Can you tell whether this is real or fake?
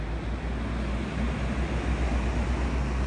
real